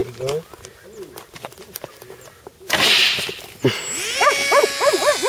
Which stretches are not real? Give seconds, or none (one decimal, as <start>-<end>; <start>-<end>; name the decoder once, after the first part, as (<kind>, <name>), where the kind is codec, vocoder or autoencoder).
none